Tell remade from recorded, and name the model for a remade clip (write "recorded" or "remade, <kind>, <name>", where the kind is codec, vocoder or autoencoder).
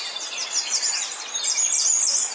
recorded